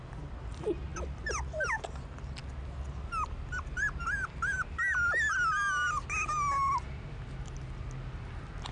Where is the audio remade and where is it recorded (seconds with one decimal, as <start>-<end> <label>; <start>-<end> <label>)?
0.0-8.7 recorded